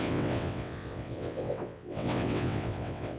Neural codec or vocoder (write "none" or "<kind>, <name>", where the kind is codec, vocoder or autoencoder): vocoder, WaveNeXt